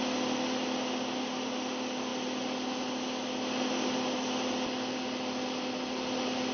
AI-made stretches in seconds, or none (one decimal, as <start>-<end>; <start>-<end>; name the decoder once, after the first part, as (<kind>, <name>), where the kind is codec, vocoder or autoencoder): none